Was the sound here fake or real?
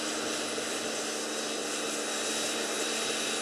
real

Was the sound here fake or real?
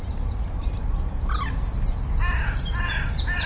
real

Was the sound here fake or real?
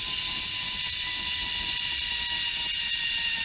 real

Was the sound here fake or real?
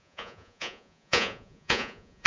fake